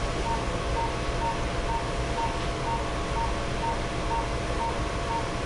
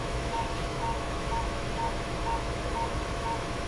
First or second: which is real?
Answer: first